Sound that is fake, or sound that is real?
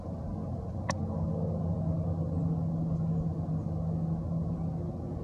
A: real